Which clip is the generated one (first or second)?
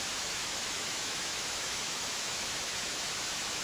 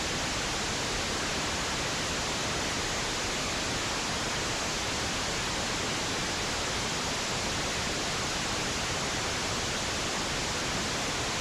first